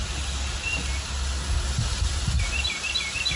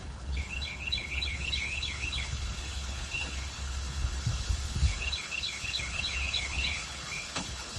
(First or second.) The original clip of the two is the first